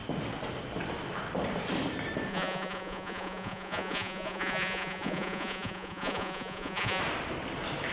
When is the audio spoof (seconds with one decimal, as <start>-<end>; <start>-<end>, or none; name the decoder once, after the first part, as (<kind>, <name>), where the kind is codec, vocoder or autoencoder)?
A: 2.3-7.0 (vocoder, Vocos)